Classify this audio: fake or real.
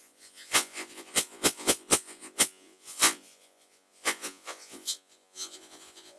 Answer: fake